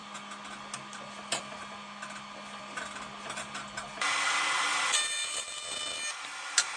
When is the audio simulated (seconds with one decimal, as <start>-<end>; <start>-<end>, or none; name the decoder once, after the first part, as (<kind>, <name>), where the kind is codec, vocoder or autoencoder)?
4.7-6.8 (vocoder, BigVGAN v2)